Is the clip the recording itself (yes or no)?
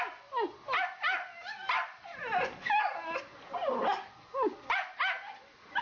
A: yes